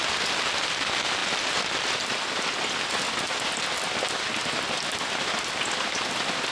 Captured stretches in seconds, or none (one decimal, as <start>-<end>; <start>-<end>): 0.0-6.5